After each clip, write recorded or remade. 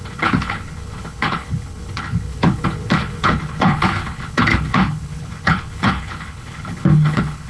remade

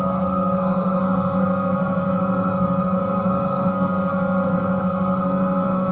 remade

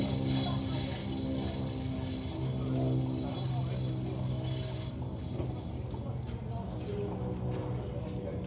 recorded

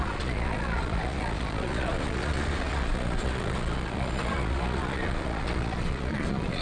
remade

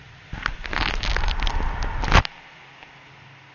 recorded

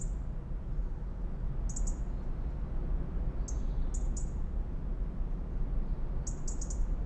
recorded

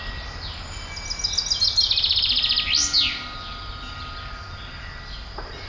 recorded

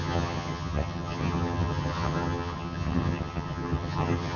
remade